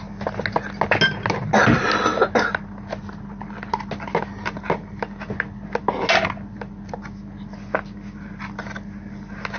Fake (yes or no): no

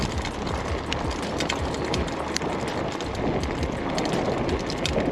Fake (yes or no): no